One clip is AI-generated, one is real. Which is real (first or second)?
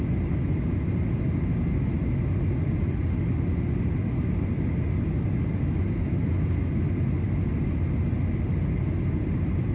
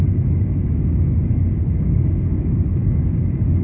first